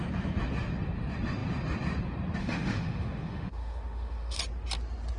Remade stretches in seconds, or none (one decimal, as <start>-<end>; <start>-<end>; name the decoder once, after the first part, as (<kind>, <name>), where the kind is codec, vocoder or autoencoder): 2.4-4.4 (autoencoder, DAC-VAE)